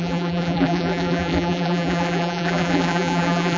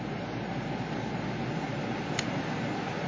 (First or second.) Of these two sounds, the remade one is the first